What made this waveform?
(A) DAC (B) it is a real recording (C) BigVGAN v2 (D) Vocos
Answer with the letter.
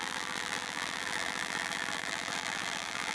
C